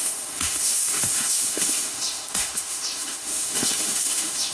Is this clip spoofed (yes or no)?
yes